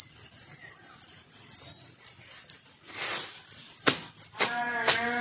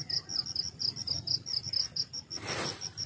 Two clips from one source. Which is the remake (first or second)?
second